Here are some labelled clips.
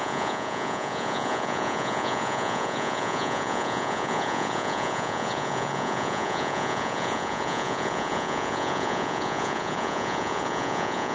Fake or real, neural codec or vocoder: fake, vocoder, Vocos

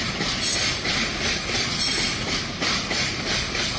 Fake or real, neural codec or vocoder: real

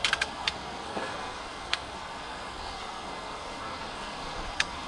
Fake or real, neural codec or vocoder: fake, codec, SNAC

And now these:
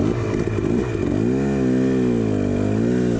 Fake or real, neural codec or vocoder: real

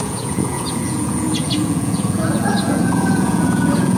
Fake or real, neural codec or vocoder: fake, vocoder, Vocos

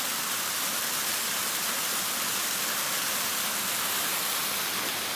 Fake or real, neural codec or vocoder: real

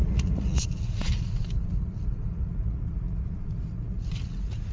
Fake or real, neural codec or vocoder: fake, vocoder, Vocos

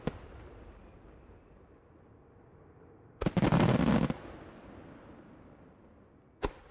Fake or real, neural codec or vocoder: real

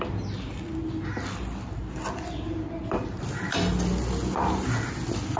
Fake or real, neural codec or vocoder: real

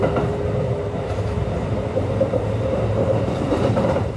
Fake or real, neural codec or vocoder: fake, vocoder, BigVGAN v2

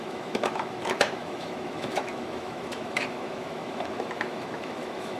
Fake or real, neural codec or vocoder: fake, autoencoder, DAC-VAE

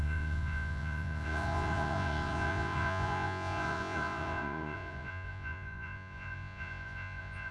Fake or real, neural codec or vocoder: fake, vocoder, Vocos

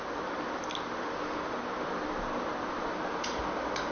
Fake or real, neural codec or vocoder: real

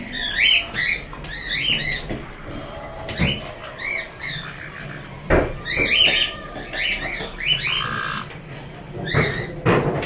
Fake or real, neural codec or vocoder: fake, vocoder, BigVGAN v2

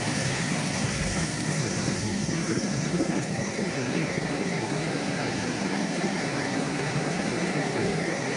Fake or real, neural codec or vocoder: fake, codec, SNAC